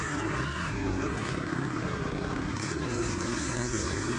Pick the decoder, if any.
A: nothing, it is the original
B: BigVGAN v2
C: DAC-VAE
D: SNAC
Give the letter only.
D